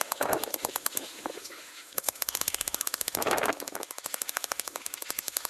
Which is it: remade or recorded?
remade